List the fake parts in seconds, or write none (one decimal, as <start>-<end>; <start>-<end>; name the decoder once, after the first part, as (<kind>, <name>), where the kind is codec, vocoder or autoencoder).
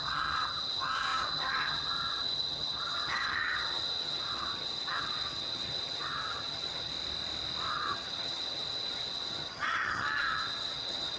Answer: 0.0-6.9 (vocoder, HiFi-GAN); 7.7-11.2